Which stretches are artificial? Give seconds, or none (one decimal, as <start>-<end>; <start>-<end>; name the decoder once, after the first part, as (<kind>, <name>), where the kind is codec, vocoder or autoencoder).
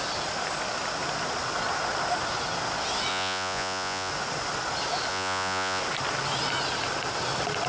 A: 3.1-4.1 (vocoder, Vocos); 5.1-5.8